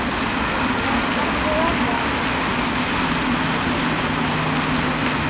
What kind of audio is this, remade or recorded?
recorded